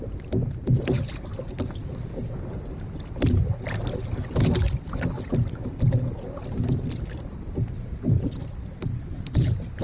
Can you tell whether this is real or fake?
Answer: real